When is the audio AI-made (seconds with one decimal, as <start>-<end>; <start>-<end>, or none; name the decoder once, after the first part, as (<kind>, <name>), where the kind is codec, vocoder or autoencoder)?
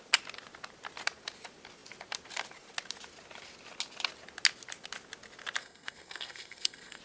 5.6-7.0 (codec, SNAC)